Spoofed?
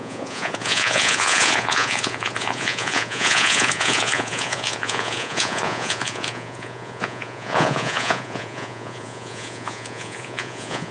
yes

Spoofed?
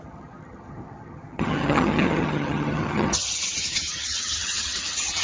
yes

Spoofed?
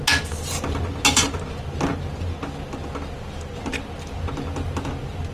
no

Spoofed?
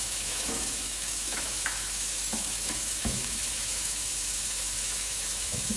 yes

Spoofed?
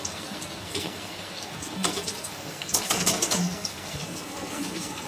yes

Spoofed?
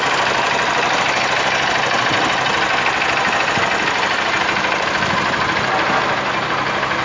no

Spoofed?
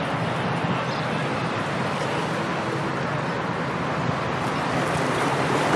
no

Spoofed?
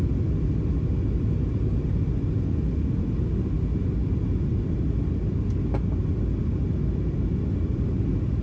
no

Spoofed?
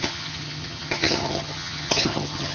yes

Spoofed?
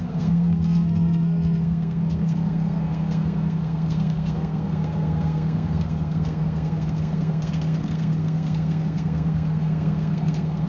yes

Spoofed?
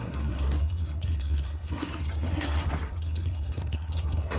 yes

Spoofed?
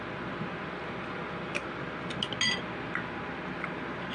no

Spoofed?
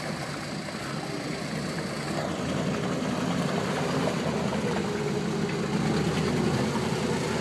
no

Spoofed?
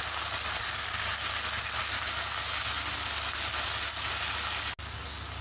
no